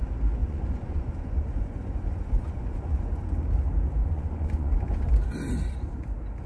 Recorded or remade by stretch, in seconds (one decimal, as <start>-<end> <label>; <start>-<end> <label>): 0.0-0.4 recorded; 0.4-3.3 remade; 3.3-4.0 recorded; 4.0-5.1 remade; 5.1-6.5 recorded